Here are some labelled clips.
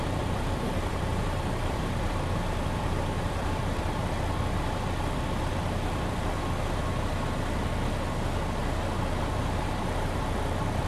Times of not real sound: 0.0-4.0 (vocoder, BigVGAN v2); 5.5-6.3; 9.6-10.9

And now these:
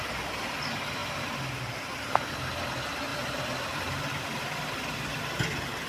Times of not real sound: 3.1-5.4 (vocoder, BigVGAN v2)

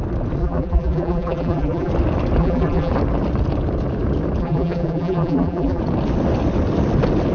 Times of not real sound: 0.4-1.9 (vocoder, BigVGAN v2); 2.4-2.9; 4.4-5.8

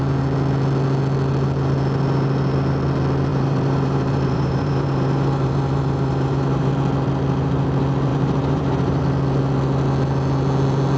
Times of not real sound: 3.3-6.7 (vocoder, BigVGAN v2); 8.1-9.0

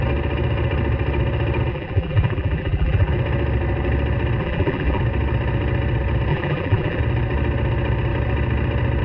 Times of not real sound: 1.7-3.1 (vocoder, BigVGAN v2); 4.4-5.0; 6.3-7.0